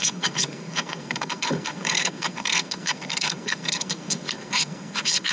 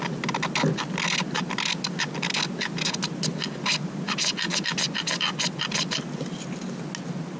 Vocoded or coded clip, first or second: first